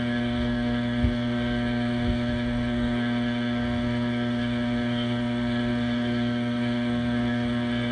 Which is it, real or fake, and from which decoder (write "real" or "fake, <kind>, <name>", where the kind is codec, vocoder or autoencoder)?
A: fake, codec, SNAC